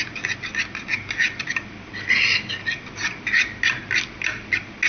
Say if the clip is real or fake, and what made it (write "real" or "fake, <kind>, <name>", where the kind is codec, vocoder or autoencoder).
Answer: real